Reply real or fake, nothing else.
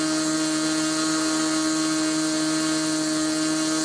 real